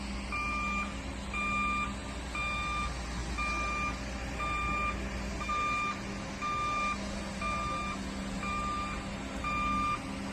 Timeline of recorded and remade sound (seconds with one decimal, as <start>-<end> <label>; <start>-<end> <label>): 0.0-10.3 recorded